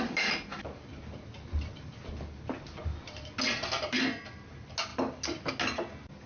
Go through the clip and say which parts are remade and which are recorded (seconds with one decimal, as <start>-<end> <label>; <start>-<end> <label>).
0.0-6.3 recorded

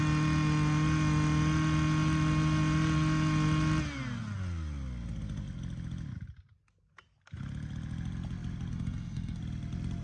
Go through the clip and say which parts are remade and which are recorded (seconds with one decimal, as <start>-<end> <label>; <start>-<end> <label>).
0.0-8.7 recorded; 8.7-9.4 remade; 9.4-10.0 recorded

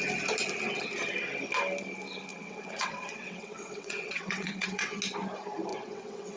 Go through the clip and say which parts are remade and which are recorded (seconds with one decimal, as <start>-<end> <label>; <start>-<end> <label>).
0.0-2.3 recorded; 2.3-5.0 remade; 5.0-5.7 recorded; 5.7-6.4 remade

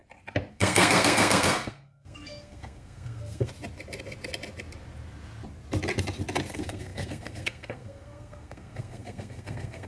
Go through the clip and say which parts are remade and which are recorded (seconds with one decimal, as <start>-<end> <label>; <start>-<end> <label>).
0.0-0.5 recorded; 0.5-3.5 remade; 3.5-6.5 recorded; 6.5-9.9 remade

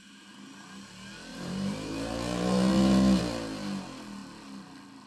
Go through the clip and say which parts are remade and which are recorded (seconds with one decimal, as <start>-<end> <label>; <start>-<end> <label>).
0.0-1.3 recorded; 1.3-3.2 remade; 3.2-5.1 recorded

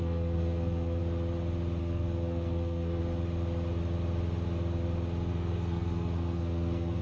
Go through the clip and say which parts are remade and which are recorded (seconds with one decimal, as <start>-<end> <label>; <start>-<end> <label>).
0.0-1.0 remade; 1.0-1.8 recorded; 1.8-3.0 remade; 3.0-5.3 recorded; 5.3-7.0 remade

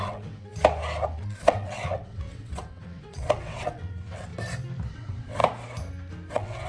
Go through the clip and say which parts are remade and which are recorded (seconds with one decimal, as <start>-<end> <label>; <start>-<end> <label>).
0.0-0.5 remade; 0.5-1.1 recorded; 1.1-4.3 remade; 4.3-4.9 recorded; 4.9-5.4 remade; 5.4-6.3 recorded; 6.3-6.7 remade